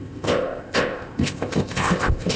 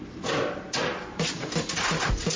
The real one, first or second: second